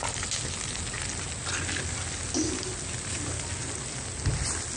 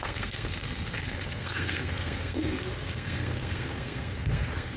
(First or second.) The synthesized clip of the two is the second